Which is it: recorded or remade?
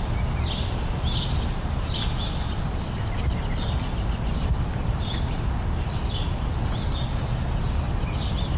recorded